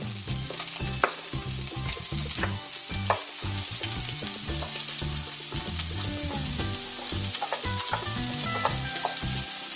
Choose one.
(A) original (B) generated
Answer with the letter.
A